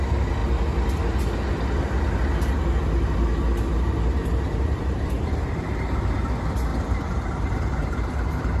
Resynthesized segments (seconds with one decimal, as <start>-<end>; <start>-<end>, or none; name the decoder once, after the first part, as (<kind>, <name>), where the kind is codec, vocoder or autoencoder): 3.7-6.0 (vocoder, BigVGAN v2); 6.7-8.6